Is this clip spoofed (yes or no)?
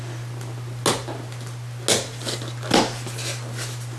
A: no